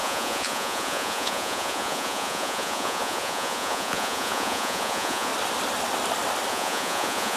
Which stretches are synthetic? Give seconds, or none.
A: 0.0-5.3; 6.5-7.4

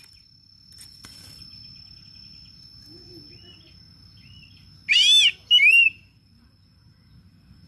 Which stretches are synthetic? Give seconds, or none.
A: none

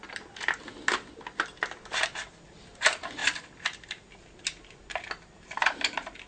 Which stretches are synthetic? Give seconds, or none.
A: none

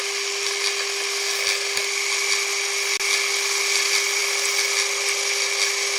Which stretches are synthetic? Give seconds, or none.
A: none

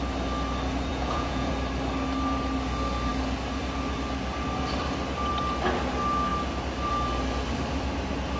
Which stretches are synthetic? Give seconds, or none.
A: 0.9-1.5

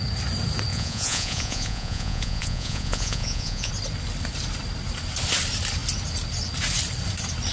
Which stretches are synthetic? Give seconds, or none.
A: 0.7-3.7

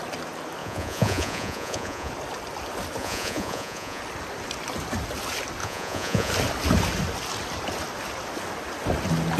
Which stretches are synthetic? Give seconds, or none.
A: 0.6-2.1; 3.0-4.0; 5.6-6.3